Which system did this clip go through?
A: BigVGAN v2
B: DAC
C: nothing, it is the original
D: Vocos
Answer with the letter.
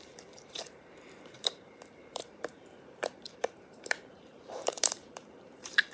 A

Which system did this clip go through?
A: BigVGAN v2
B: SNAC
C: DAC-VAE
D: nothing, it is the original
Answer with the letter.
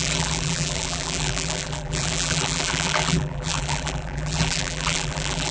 A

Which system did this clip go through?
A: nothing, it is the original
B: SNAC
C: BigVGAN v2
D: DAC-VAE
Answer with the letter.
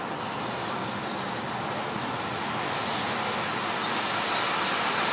A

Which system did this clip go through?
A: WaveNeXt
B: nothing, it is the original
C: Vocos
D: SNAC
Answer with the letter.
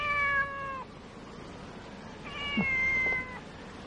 B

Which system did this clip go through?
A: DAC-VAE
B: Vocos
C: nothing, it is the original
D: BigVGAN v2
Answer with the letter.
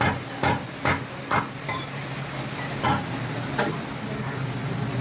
C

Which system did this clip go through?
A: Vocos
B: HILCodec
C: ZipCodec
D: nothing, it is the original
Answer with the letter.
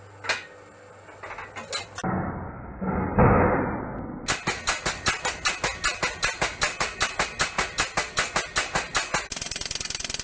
D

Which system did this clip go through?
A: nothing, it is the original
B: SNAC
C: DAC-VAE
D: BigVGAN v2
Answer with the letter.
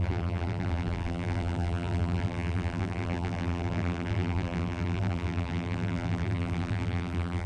D